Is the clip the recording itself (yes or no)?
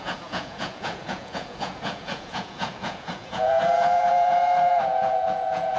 no